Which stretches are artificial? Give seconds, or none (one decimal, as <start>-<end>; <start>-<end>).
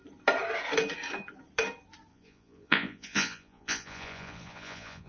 2.1-5.1